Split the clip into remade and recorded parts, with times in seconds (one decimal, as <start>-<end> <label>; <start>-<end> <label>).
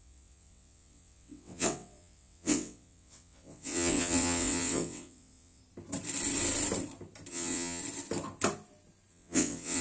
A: 0.0-5.6 remade; 5.6-7.3 recorded; 7.3-7.8 remade; 7.8-9.1 recorded; 9.1-9.8 remade